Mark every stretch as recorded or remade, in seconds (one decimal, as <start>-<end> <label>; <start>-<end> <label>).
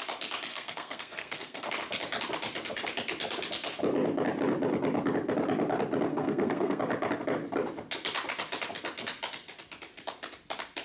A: 0.0-0.5 recorded; 0.5-1.7 remade; 1.7-6.1 recorded; 6.1-6.8 remade; 6.8-10.8 recorded